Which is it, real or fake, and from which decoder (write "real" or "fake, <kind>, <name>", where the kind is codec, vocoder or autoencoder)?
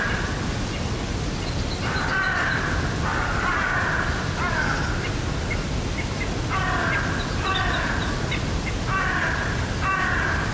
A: real